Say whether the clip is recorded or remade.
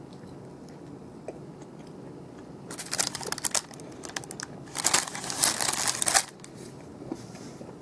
recorded